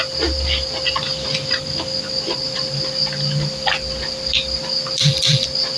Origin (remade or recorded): recorded